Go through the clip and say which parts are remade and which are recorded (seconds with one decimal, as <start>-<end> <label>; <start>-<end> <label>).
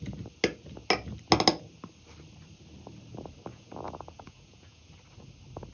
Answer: 0.0-3.5 recorded; 3.5-4.9 remade; 4.9-5.7 recorded